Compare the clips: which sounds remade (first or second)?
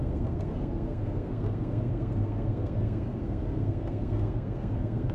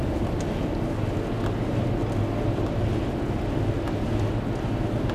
first